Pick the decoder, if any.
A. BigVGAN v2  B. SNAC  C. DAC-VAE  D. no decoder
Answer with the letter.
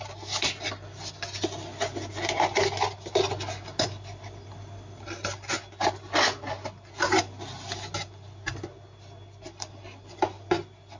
D